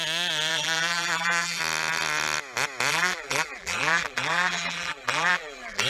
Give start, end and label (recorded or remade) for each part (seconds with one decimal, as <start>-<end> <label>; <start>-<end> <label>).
0.0-0.5 recorded; 0.5-1.6 remade; 1.6-2.9 recorded; 2.9-5.9 remade

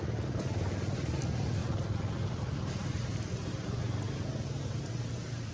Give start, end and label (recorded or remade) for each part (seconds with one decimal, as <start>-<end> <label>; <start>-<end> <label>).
0.0-5.5 recorded

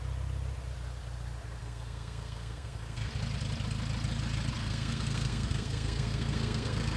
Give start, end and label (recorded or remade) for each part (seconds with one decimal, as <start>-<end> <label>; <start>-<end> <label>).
0.0-1.6 recorded; 1.6-3.1 remade; 3.1-4.6 recorded; 4.6-7.0 remade